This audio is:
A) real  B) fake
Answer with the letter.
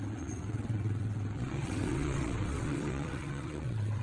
B